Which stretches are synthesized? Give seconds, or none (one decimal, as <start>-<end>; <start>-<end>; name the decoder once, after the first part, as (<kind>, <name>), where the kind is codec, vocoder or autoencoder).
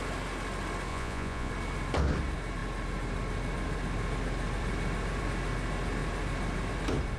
0.9-1.5 (vocoder, Vocos)